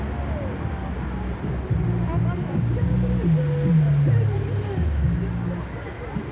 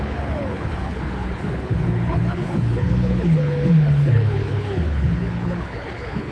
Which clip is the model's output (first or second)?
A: second